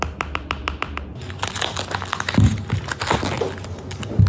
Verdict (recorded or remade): recorded